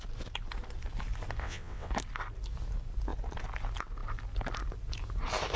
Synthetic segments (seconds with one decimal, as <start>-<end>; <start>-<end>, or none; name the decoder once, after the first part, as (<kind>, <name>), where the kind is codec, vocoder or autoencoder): 1.4-1.9 (vocoder, WaveNeXt)